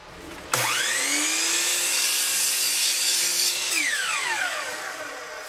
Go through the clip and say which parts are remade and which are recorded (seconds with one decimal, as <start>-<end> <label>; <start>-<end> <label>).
0.0-1.7 recorded; 1.7-5.0 remade; 5.0-5.5 recorded